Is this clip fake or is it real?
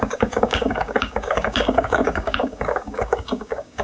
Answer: fake